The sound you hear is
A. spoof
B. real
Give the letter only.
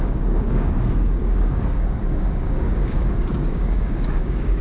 A